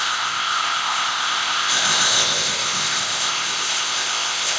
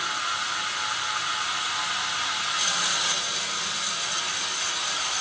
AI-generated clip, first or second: first